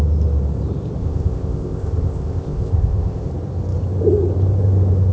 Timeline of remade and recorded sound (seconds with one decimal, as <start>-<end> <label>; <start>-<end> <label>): 0.0-1.0 recorded; 1.0-3.3 remade; 3.3-5.1 recorded